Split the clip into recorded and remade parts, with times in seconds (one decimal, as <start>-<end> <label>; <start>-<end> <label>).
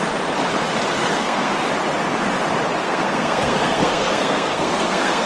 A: 0.0-1.0 recorded; 1.0-1.6 remade; 1.6-2.8 recorded; 2.8-5.3 remade